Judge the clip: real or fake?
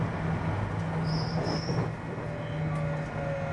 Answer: real